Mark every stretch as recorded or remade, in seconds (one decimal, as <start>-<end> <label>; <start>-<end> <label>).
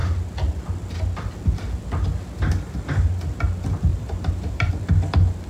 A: 0.0-3.9 recorded; 3.9-4.7 remade; 4.7-5.5 recorded